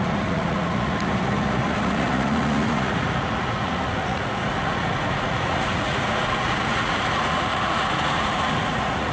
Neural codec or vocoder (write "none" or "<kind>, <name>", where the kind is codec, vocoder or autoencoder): vocoder, Vocos